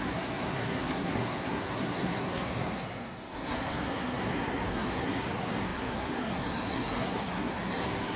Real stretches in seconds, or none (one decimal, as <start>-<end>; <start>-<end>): none